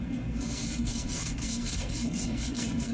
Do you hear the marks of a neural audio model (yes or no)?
yes